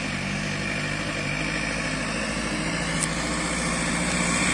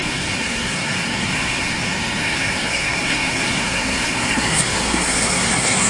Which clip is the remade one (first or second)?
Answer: second